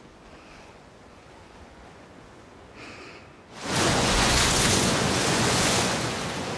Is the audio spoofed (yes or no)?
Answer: yes